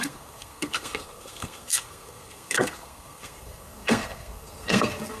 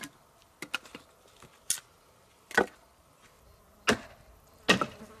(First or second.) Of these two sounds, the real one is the second